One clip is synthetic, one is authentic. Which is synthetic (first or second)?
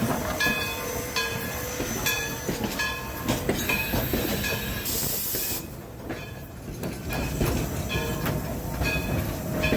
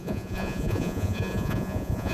second